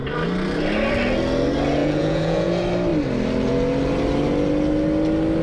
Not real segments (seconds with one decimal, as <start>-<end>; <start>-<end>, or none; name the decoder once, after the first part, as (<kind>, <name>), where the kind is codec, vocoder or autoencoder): 1.8-2.5 (vocoder, Vocos)